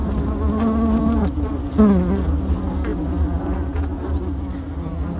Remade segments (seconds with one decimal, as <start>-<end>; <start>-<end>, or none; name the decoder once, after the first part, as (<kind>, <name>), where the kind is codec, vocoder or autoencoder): none